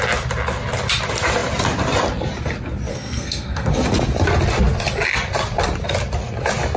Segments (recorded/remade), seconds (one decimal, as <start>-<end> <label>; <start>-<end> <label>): 0.0-2.9 recorded; 2.9-3.7 remade; 3.7-6.8 recorded

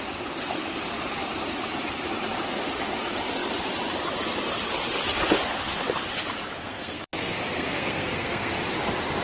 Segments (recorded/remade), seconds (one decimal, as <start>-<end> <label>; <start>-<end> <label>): 0.0-6.6 recorded; 6.6-8.5 remade; 8.5-9.2 recorded